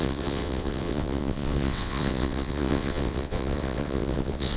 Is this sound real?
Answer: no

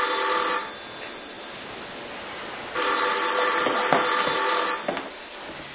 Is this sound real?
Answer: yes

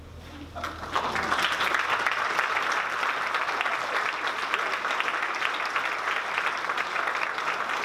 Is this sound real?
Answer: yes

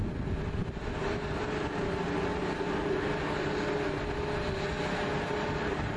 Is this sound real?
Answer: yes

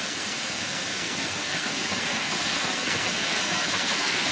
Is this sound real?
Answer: no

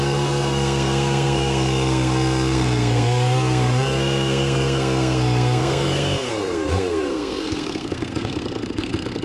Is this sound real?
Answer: no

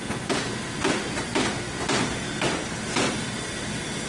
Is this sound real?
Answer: yes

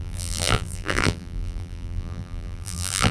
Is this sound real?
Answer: no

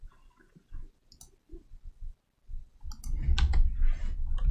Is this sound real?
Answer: yes